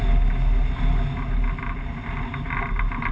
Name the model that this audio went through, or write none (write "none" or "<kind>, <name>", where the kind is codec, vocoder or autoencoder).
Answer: none